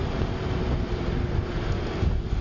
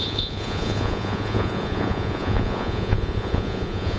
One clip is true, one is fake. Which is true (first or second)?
first